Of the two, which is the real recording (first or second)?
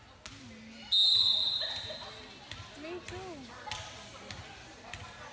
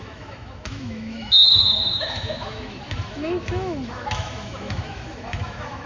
first